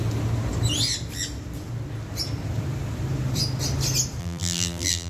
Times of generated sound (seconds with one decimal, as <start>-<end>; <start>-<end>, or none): 4.2-5.1